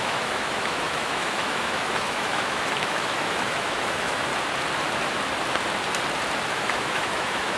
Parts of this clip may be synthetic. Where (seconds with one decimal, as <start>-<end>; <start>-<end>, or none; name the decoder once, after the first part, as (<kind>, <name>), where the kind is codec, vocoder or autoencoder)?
0.0-4.3 (autoencoder, DAC-VAE); 6.5-7.6